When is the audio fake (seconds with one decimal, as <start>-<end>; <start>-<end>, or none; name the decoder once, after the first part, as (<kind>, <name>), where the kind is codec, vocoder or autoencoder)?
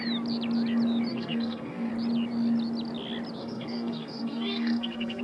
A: 1.1-1.9 (codec, SNAC); 3.4-5.2